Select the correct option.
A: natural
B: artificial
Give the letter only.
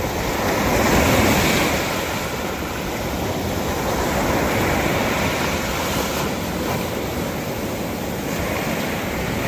A